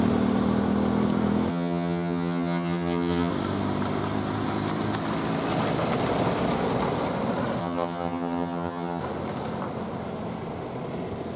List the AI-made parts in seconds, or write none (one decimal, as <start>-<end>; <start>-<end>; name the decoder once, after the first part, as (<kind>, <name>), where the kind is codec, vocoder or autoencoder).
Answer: 1.5-3.3 (vocoder, HiFi-GAN); 7.6-9.0